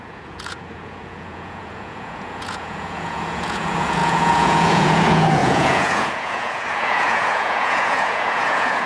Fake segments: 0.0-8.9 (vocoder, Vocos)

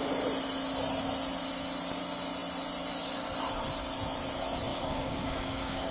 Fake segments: 4.7-5.9 (codec, DAC)

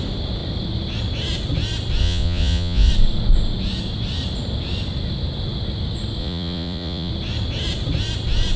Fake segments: 2.0-2.9 (vocoder, Vocos); 6.2-7.1

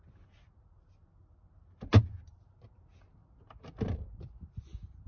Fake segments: none

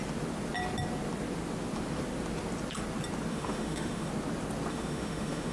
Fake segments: 3.3-4.1 (autoencoder, DAC-VAE); 4.7-5.5

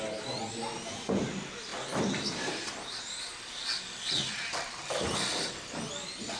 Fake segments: none

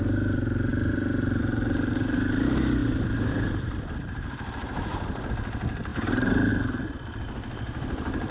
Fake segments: 2.8-5.3 (vocoder, BigVGAN v2); 5.9-6.5